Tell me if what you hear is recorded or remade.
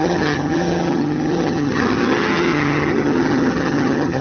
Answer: remade